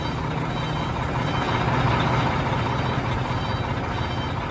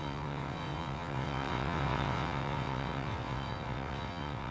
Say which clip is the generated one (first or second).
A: second